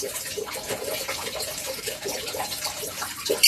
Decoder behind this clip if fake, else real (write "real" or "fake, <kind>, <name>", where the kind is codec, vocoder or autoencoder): fake, vocoder, BigVGAN v2